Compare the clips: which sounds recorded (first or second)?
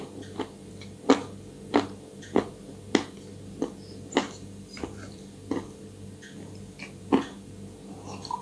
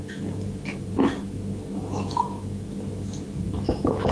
first